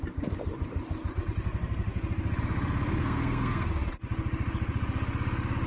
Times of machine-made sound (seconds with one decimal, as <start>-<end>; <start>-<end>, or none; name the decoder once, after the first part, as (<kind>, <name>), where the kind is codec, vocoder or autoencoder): 3.0-3.7 (codec, SNAC)